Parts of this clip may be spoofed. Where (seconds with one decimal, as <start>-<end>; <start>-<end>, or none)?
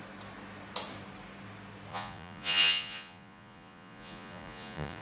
1.9-5.0